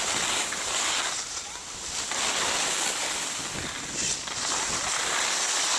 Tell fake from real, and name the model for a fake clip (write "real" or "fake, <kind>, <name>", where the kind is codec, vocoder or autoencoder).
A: real